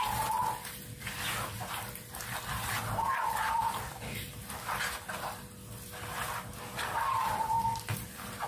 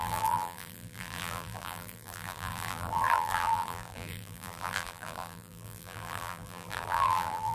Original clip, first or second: first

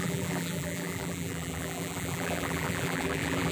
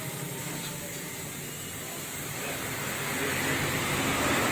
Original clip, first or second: second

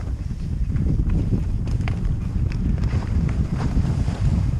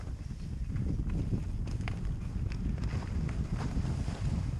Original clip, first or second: second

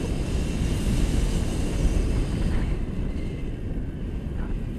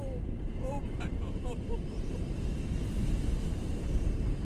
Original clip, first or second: first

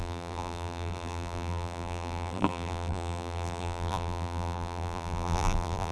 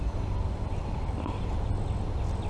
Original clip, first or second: second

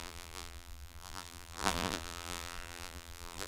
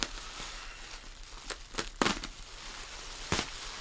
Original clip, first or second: second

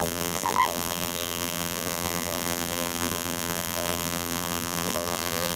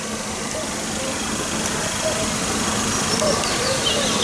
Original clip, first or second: second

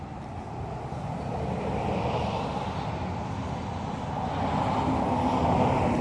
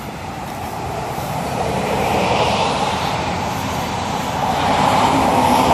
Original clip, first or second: first